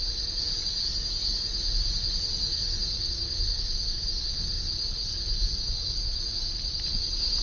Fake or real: real